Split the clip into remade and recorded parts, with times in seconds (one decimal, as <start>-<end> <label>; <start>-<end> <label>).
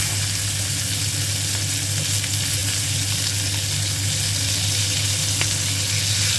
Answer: 0.0-6.4 recorded